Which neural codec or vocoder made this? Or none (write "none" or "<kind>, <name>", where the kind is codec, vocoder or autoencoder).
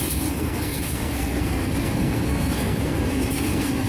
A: codec, SNAC